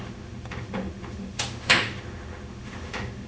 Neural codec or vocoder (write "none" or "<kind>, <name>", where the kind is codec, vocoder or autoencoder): autoencoder, DAC-VAE